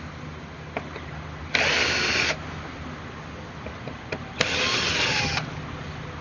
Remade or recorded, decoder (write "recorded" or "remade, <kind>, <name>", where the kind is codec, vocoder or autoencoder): recorded